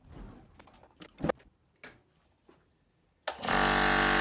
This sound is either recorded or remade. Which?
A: recorded